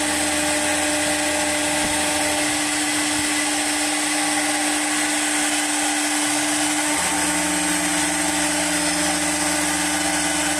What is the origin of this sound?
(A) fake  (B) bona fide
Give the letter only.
B